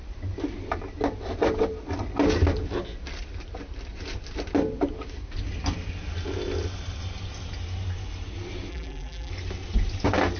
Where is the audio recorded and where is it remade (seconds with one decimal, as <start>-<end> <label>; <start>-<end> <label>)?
0.0-8.7 recorded; 8.7-9.3 remade; 9.3-10.4 recorded